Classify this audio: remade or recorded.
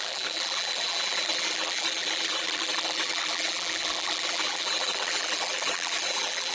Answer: remade